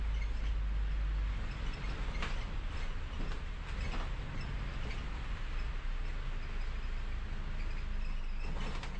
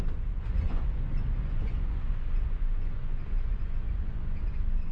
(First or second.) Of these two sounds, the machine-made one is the second